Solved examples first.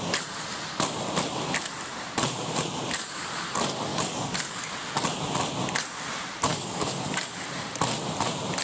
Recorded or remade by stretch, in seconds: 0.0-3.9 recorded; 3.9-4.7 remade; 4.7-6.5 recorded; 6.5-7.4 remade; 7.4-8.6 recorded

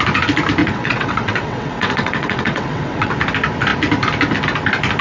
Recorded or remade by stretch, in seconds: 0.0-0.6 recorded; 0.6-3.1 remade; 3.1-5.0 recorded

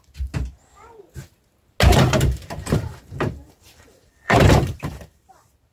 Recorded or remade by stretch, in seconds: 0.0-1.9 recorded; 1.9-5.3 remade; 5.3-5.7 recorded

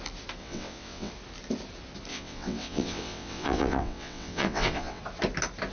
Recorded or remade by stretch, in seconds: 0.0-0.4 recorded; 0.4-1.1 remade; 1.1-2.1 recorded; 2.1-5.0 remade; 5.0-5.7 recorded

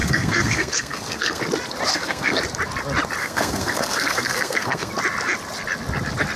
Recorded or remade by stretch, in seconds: 0.0-1.4 remade; 1.4-1.9 recorded; 1.9-2.4 remade; 2.4-3.2 recorded; 3.2-4.9 remade; 4.9-6.4 recorded